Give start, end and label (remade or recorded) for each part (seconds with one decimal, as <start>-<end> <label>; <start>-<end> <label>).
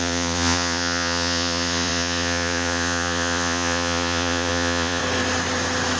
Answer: 0.0-5.0 remade; 5.0-6.0 recorded